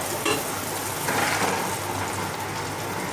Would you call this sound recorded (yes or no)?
yes